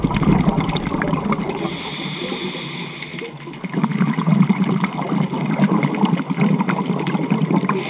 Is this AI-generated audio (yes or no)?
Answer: no